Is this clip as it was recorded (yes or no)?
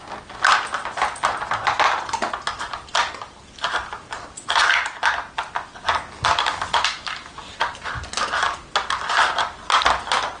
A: yes